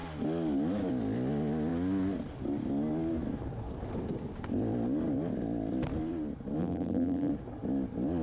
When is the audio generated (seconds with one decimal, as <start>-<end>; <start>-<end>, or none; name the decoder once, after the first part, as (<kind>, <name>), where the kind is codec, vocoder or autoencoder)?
6.6-7.3 (vocoder, BigVGAN v2)